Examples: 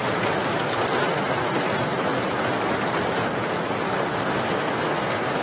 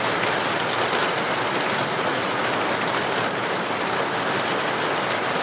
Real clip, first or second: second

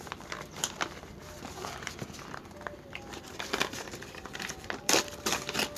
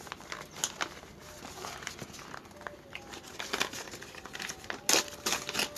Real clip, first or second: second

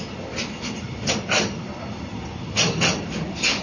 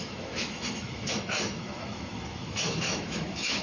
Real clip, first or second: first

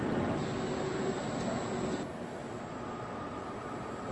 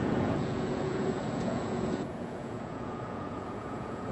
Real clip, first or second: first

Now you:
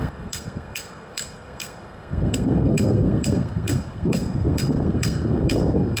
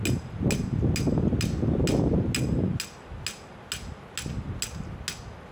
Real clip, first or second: second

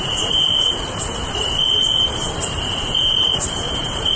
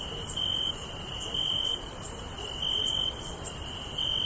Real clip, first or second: second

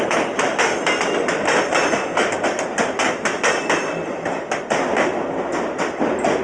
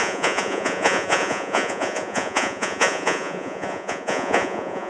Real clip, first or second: first